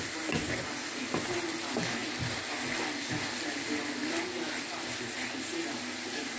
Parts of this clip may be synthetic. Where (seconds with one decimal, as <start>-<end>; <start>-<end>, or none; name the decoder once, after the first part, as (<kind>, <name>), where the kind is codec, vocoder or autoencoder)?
none